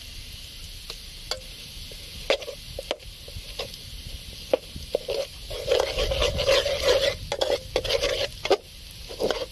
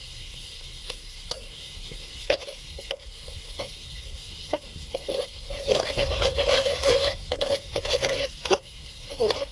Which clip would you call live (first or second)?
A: first